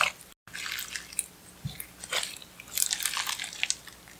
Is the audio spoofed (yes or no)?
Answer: no